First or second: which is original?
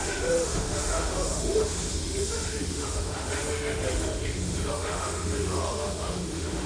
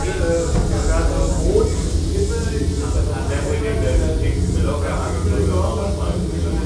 second